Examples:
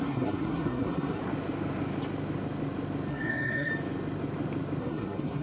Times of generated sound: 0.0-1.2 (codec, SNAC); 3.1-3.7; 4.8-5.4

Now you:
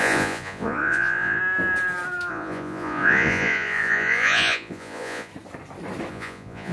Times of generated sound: 0.0-1.4 (vocoder, Vocos); 2.3-5.3; 6.1-6.7